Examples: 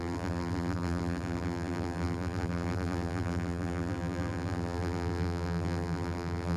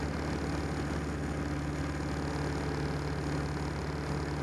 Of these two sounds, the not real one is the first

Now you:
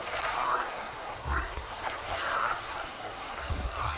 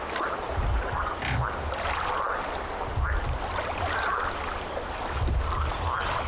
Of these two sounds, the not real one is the first